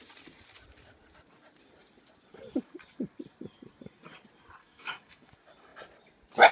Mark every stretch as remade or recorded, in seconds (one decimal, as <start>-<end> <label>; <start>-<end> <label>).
0.0-4.6 recorded; 4.6-5.3 remade; 5.3-6.5 recorded